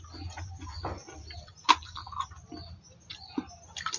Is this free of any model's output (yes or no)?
yes